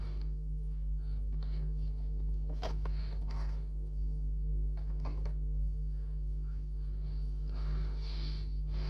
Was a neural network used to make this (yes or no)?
yes